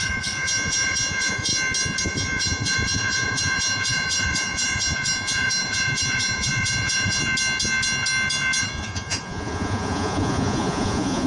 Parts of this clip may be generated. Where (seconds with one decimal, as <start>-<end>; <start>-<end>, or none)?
0.0-1.5; 2.0-7.2; 8.6-11.3